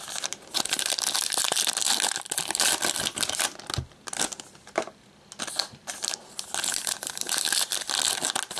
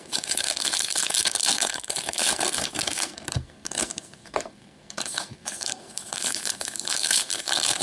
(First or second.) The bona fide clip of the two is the first